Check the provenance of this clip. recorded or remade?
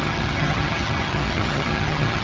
remade